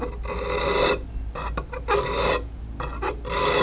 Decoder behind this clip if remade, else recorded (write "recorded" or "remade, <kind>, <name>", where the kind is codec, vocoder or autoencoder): recorded